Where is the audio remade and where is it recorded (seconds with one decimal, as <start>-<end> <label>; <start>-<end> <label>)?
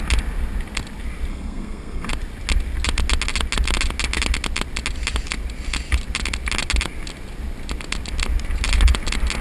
0.0-1.3 recorded; 1.3-2.1 remade; 2.1-9.4 recorded